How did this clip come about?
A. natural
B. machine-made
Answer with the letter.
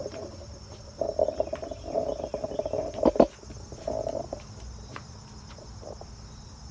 A